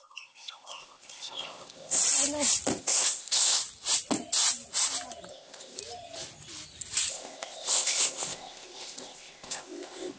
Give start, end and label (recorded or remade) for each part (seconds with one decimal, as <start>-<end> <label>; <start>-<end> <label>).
0.0-2.0 remade; 2.0-2.8 recorded; 2.8-3.6 remade; 3.6-5.3 recorded; 5.3-5.8 remade; 5.8-7.1 recorded; 7.1-10.2 remade